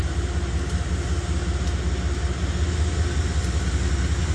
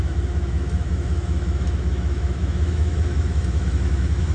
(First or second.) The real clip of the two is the first